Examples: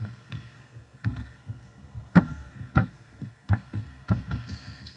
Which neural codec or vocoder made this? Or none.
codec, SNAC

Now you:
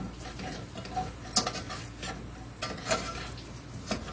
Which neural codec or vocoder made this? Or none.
none